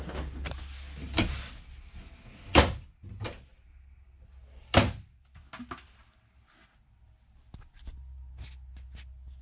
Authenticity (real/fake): real